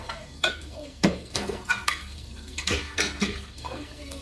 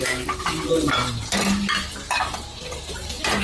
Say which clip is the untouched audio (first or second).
second